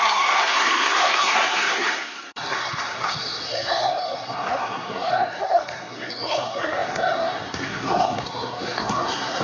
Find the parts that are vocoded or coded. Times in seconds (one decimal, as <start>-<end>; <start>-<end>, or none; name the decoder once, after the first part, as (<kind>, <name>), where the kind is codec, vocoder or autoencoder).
0.0-9.4 (codec, SNAC)

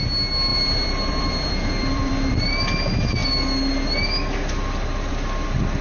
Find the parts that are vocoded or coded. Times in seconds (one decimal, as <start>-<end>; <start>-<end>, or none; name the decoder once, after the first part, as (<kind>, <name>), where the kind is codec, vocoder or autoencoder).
0.5-2.5 (vocoder, BigVGAN v2)

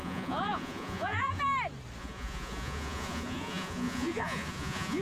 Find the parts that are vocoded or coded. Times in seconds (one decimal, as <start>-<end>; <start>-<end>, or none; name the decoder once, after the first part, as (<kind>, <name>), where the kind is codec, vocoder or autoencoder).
0.0-1.4 (vocoder, Vocos); 2.0-5.0

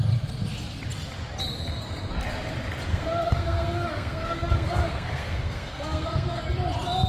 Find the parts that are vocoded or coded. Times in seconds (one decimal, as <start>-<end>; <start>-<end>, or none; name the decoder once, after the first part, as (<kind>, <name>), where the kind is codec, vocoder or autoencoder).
2.9-6.4 (codec, SNAC)

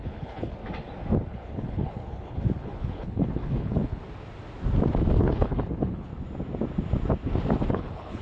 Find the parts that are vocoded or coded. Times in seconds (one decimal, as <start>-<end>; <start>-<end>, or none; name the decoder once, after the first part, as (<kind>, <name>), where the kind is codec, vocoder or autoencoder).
0.0-0.6 (codec, HILCodec); 1.3-4.0; 5.2-6.1; 7.7-8.2

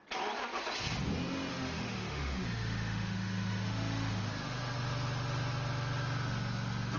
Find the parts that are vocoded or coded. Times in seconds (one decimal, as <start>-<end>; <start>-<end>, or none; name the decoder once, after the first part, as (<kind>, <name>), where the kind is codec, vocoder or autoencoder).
1.5-4.3 (autoencoder, DAC-VAE)